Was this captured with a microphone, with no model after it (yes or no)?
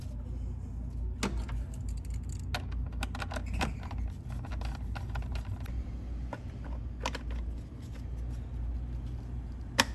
yes